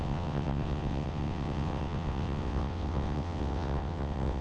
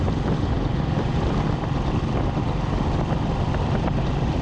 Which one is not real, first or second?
first